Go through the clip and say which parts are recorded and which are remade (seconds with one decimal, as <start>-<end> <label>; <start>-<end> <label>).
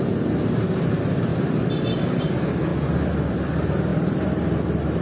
0.0-5.0 recorded